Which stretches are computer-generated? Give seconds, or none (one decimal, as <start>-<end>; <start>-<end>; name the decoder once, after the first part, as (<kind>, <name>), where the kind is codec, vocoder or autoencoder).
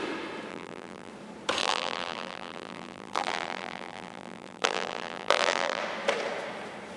0.5-1.1 (vocoder, BigVGAN v2); 1.6-5.8